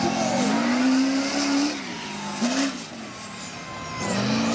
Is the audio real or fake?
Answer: real